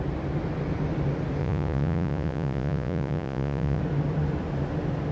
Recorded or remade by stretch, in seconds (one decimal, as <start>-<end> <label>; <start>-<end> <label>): 0.0-1.4 recorded; 1.4-3.8 remade; 3.8-5.1 recorded